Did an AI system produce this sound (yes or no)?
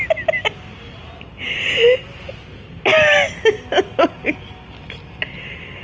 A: no